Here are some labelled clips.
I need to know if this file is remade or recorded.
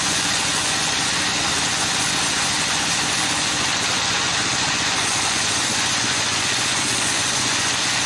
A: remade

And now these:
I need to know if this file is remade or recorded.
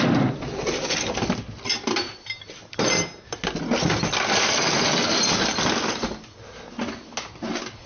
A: recorded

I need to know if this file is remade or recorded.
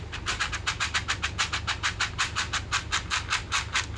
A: recorded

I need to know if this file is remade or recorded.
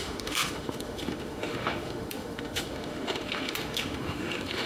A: remade